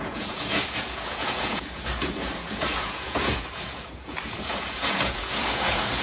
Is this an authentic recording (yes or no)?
no